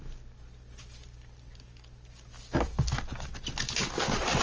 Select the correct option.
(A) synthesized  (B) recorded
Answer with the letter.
B